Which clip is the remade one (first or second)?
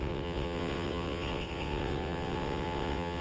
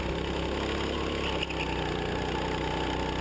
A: first